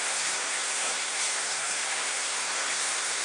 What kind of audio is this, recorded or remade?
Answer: remade